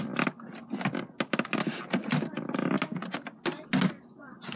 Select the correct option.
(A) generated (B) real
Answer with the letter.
B